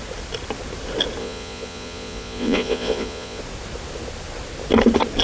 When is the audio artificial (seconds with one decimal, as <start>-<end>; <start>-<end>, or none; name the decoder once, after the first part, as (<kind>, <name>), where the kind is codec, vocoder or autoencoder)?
1.2-3.4 (vocoder, Vocos)